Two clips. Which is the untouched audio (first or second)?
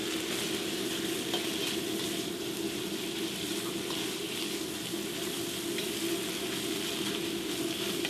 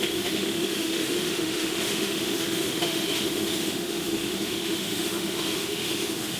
first